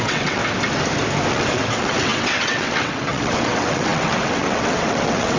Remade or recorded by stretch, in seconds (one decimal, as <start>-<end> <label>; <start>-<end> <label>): 0.0-0.4 remade; 0.4-1.3 recorded; 1.3-5.4 remade